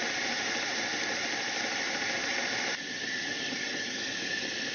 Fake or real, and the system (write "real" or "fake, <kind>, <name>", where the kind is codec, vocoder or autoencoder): fake, vocoder, BigVGAN v2